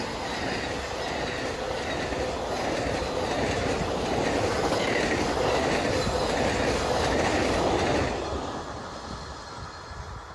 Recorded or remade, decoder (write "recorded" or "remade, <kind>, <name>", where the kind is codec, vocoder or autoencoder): recorded